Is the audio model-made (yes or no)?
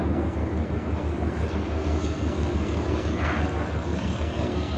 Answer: yes